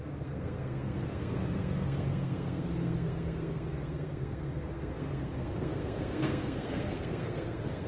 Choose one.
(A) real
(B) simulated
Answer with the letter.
B